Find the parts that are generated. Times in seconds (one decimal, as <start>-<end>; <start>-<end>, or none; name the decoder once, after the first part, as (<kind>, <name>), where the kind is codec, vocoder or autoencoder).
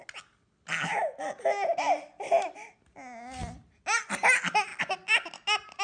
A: none